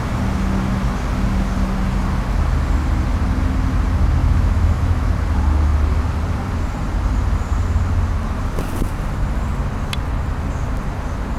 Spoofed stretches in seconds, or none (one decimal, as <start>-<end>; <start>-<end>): 4.2-5.1